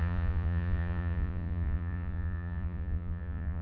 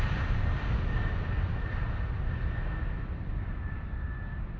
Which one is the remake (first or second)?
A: first